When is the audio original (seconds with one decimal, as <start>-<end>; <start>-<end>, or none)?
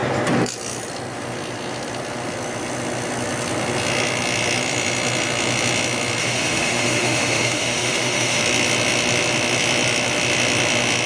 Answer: 0.0-6.2; 8.4-11.1